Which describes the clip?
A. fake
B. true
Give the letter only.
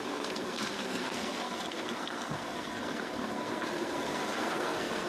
A